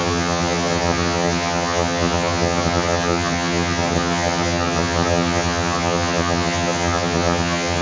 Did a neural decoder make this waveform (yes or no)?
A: yes